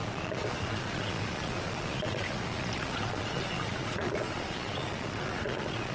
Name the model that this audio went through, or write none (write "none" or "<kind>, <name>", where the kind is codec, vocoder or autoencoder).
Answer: vocoder, Vocos